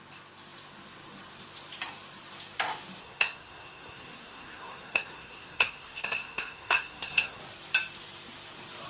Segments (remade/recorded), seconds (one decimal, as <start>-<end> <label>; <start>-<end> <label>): 0.0-3.0 recorded; 3.0-7.4 remade; 7.4-8.9 recorded